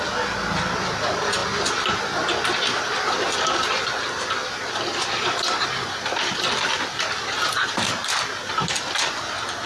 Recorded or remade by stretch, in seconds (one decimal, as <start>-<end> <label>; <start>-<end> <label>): 0.0-9.7 recorded